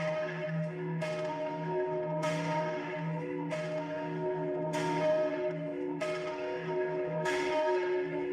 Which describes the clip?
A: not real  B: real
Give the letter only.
A